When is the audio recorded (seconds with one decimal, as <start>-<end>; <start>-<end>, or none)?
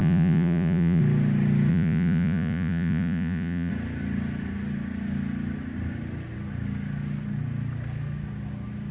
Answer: 1.0-1.7; 3.7-8.9